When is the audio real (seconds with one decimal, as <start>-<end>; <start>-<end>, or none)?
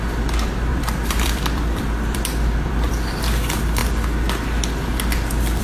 0.0-0.7; 2.9-5.6